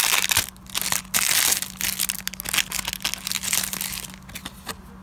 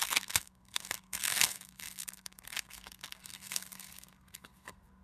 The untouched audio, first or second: first